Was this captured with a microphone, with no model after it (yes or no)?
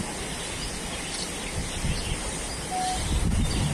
yes